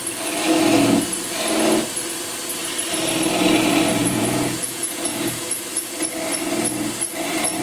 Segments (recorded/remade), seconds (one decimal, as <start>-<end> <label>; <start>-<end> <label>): 0.0-4.0 recorded; 4.0-6.0 remade; 6.0-7.6 recorded